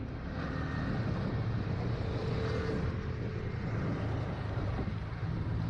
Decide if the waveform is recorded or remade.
recorded